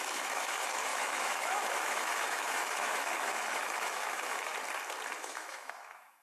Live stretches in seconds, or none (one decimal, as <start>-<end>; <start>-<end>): 4.5-5.2